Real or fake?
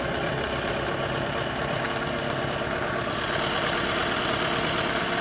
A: real